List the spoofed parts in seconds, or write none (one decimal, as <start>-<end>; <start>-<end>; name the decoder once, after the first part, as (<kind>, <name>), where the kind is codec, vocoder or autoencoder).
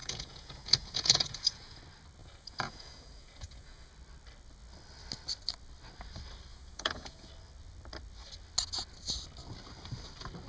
0.0-1.8 (vocoder, Vocos); 2.2-3.9; 6.5-7.3